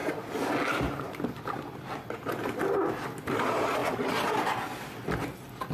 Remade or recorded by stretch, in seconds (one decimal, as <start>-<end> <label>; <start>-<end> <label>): 0.0-5.7 recorded